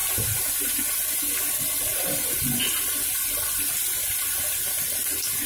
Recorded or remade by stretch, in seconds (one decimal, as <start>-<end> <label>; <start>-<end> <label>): 0.0-1.9 recorded; 1.9-5.5 remade